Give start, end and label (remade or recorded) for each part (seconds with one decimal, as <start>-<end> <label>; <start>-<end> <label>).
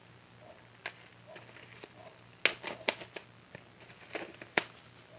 0.0-5.2 recorded